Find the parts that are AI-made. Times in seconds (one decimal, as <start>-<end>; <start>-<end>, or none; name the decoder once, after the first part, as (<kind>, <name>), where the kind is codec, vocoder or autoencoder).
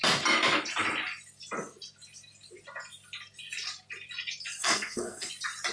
4.6-5.3 (codec, SNAC)